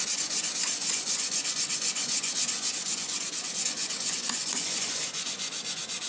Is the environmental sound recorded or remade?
remade